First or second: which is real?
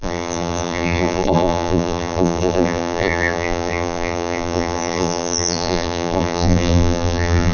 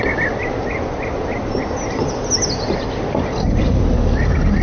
second